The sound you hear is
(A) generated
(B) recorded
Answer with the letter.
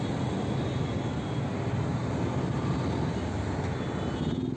B